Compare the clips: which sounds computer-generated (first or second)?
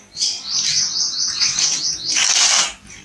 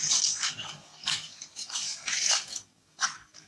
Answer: second